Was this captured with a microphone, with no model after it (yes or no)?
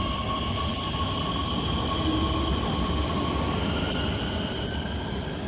yes